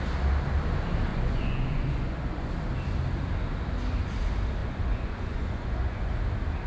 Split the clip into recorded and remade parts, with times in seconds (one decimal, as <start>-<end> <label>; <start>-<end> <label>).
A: 0.0-1.1 recorded; 1.1-2.5 remade; 2.5-4.6 recorded; 4.6-6.1 remade; 6.1-6.7 recorded